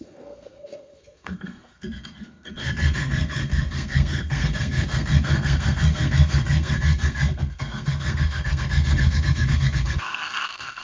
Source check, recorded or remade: remade